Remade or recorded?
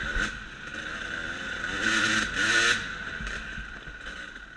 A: recorded